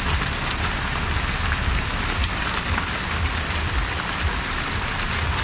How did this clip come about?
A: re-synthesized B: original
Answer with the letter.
B